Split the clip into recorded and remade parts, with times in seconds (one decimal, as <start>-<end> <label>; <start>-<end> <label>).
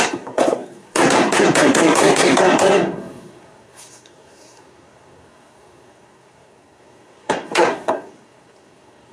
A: 0.0-9.1 remade